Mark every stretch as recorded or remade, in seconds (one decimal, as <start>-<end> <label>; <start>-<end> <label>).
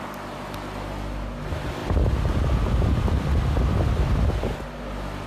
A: 0.0-5.3 recorded